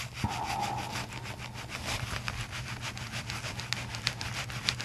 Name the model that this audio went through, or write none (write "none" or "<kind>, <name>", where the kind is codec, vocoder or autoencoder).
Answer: none